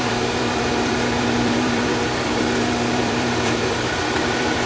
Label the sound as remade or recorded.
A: remade